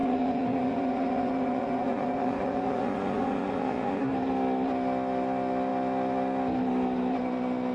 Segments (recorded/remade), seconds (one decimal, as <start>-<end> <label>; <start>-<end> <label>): 0.0-4.0 remade; 4.0-7.7 recorded